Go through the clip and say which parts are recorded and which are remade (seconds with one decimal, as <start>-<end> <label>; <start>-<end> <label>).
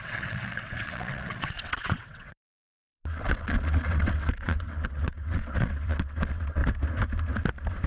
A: 0.0-6.6 remade; 6.6-7.9 recorded